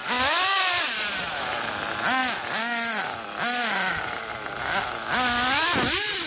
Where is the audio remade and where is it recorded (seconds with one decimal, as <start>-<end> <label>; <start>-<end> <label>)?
0.0-6.3 recorded